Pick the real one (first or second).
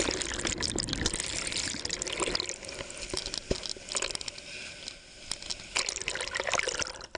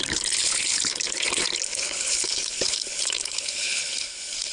first